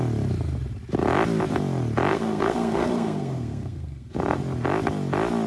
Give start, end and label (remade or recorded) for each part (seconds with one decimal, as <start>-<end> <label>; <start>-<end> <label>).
0.0-2.1 recorded; 2.1-4.4 remade; 4.4-5.5 recorded